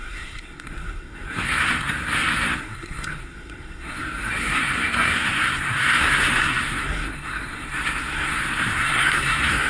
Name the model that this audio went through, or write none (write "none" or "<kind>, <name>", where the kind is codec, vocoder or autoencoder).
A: codec, SNAC